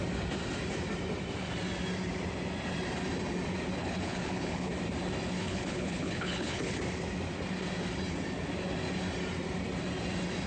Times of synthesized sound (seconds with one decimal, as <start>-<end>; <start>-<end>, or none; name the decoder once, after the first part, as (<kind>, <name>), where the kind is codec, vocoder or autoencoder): 3.8-4.7 (codec, HILCodec); 5.4-6.8